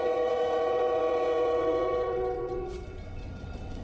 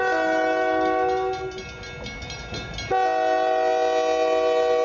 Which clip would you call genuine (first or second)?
second